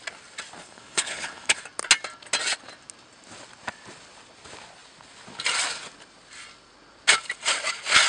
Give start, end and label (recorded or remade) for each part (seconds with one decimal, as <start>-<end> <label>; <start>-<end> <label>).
0.0-0.6 recorded; 0.6-1.6 remade; 1.6-8.1 recorded